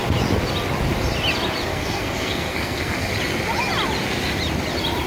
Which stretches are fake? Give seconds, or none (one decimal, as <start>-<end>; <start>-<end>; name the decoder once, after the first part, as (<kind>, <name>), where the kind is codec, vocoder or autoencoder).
1.7-3.1 (codec, SNAC)